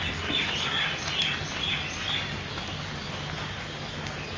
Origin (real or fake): real